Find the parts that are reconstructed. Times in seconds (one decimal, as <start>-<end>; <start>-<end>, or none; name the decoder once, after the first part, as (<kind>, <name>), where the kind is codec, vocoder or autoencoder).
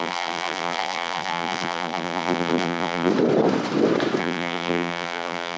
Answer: 0.0-3.1 (vocoder, BigVGAN v2); 4.2-5.6